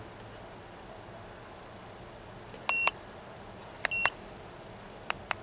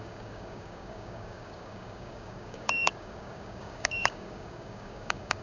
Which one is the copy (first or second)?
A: second